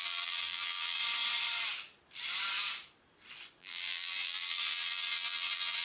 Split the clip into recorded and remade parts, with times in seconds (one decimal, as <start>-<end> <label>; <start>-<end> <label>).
0.0-1.0 remade; 1.0-3.6 recorded; 3.6-5.8 remade